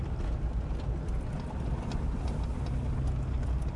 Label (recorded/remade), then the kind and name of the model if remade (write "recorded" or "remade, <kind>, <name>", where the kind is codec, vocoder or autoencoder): recorded